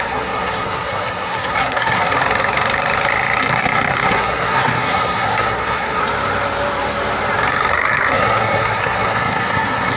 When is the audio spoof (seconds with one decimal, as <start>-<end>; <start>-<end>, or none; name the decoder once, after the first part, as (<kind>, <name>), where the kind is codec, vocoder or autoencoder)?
0.0-2.1 (codec, SNAC); 3.4-6.0; 7.7-10.0